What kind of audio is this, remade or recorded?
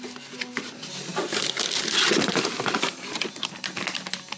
recorded